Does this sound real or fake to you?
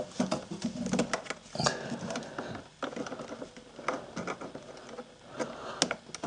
real